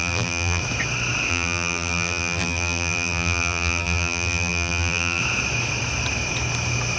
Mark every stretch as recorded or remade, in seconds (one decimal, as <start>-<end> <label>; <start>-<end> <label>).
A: 0.0-0.6 remade; 0.6-1.3 recorded; 1.3-5.2 remade; 5.2-7.0 recorded